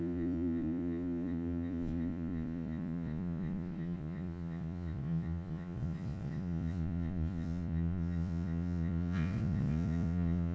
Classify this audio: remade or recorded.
remade